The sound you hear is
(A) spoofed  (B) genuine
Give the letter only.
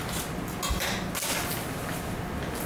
B